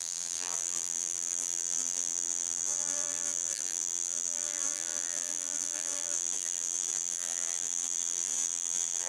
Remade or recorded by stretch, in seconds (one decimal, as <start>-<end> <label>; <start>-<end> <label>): 0.0-9.1 remade